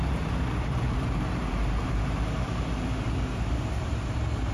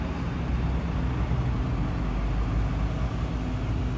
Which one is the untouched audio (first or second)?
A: second